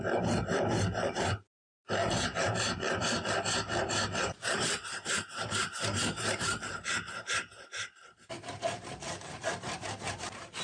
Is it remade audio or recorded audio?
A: remade